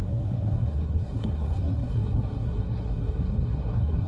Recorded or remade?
remade